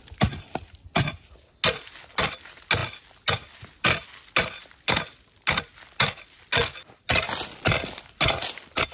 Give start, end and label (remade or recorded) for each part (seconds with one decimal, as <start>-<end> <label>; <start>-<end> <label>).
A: 0.0-8.9 recorded